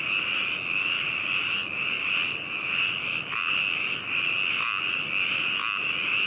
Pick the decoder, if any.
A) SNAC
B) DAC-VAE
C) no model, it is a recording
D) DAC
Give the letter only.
C